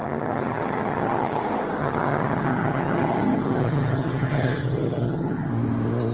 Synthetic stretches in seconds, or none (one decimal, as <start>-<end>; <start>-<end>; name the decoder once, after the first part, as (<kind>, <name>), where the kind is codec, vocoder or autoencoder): 0.0-1.4 (vocoder, HiFi-GAN); 1.8-5.5